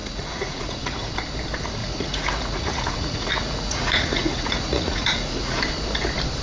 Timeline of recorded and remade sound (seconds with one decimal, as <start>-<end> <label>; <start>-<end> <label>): 0.0-1.1 remade; 1.1-1.8 recorded; 1.8-5.6 remade; 5.6-6.4 recorded